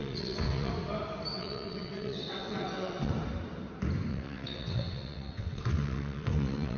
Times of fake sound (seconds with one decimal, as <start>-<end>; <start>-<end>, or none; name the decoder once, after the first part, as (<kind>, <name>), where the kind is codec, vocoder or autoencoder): 0.0-0.7 (vocoder, WaveNeXt); 1.3-3.1; 4.1-6.8